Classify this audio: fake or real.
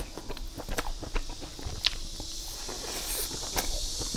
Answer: real